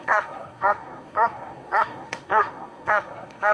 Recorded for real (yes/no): no